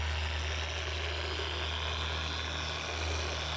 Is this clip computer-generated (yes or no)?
no